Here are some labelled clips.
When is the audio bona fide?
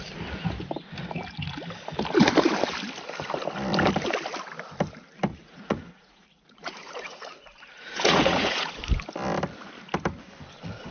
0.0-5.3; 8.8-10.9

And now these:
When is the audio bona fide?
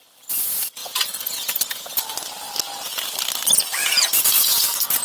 0.0-0.8; 1.8-3.8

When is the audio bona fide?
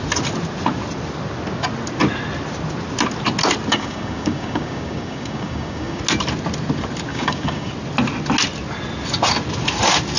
0.0-3.7; 6.0-7.1; 7.7-10.2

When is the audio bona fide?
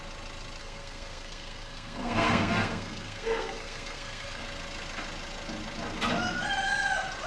0.0-0.6; 4.4-7.3